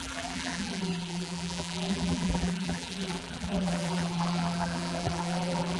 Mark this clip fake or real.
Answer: fake